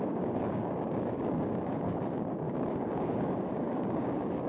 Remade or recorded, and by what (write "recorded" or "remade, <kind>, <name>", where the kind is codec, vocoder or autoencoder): remade, codec, DAC